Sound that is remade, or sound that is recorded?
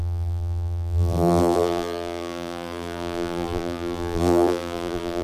remade